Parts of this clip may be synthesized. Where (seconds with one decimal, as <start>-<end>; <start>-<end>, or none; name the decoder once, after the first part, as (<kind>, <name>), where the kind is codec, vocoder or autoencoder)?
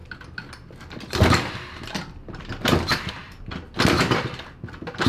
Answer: none